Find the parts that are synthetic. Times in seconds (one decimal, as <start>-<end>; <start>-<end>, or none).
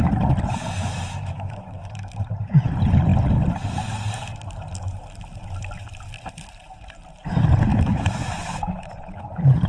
0.8-2.1; 7.7-8.9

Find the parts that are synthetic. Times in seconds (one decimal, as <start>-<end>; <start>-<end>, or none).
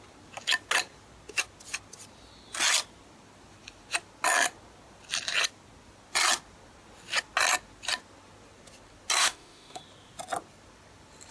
9.2-9.8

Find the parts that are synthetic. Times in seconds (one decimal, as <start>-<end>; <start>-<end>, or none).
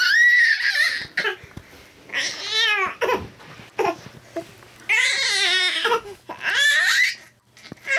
5.6-6.2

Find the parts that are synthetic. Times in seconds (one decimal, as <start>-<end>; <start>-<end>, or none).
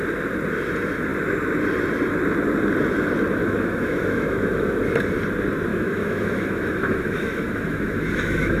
3.4-4.8; 5.7-8.6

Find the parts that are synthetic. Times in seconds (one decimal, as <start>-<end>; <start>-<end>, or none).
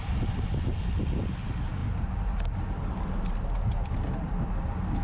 none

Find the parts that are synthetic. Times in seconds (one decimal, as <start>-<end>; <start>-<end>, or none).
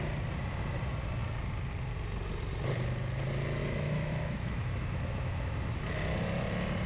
3.6-5.5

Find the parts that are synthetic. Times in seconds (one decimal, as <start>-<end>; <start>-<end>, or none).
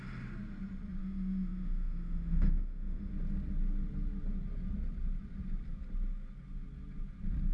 1.0-3.1